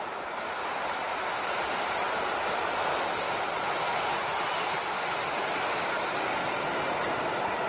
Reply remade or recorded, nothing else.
recorded